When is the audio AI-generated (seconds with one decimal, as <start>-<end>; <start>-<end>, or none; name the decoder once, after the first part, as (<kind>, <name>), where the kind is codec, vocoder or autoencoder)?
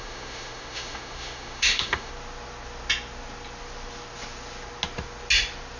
0.0-2.1 (autoencoder, DAC-VAE)